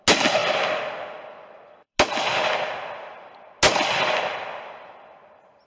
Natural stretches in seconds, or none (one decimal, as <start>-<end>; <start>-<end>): 0.0-5.7